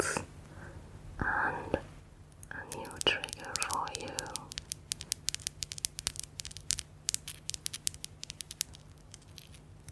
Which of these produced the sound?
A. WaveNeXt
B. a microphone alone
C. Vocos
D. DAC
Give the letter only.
B